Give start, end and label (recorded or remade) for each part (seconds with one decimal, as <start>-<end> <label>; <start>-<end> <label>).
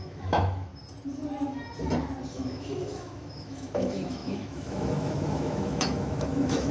0.0-0.7 remade; 0.7-2.3 recorded; 2.3-6.7 remade